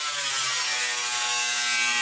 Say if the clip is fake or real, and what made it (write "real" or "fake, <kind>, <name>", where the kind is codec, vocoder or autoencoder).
real